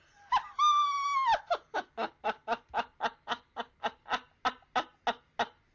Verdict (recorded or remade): recorded